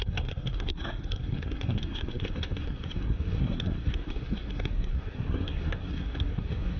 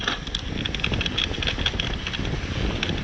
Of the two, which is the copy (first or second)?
first